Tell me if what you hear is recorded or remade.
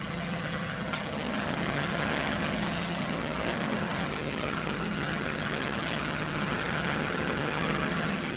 remade